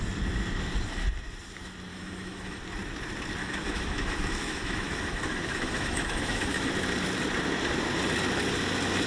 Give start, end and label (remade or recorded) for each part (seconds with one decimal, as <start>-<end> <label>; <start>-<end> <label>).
0.0-1.9 recorded; 1.9-2.6 remade; 2.6-3.4 recorded; 3.4-6.7 remade; 6.7-9.1 recorded